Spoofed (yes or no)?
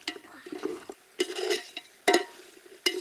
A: no